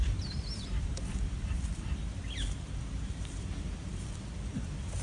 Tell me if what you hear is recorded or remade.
remade